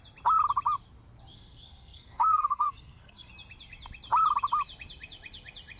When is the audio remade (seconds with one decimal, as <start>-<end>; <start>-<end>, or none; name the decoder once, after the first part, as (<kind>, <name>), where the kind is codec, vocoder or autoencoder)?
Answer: 1.3-3.3 (codec, SNAC)